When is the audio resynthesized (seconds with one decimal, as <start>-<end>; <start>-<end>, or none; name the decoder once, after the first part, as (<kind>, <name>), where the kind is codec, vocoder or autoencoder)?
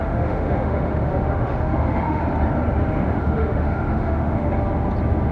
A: 0.0-2.2 (autoencoder, DAC-VAE); 2.8-4.5